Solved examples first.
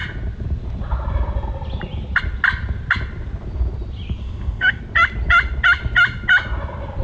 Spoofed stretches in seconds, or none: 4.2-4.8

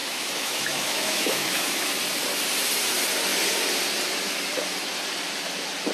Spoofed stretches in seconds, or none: 0.0-1.9

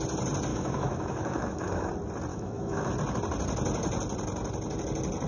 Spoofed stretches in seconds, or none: 0.5-1.9; 2.3-2.9

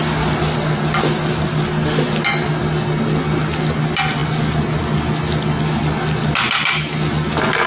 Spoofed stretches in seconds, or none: none

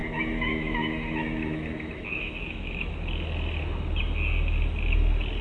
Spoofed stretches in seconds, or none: 0.0-2.9